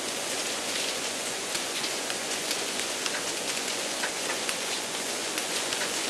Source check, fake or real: fake